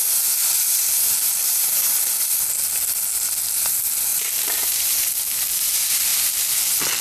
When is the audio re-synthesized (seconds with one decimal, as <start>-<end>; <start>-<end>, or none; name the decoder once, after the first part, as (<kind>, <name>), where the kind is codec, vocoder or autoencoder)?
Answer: 0.4-2.1 (vocoder, BigVGAN v2); 4.1-5.1